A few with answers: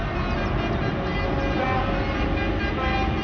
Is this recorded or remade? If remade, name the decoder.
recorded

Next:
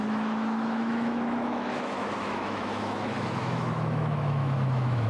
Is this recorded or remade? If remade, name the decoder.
remade, autoencoder, DAC-VAE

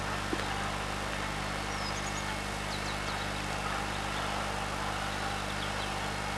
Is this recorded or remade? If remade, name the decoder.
recorded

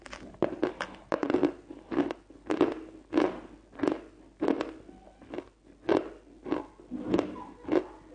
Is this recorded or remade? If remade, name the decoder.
recorded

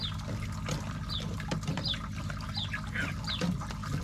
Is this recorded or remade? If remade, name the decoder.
recorded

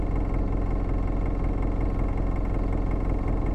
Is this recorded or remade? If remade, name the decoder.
recorded